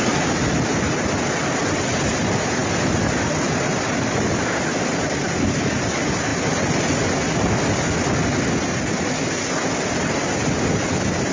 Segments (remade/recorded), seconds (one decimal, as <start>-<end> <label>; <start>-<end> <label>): 0.0-11.3 recorded